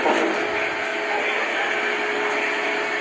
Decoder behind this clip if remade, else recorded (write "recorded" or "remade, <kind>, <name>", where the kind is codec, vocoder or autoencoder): recorded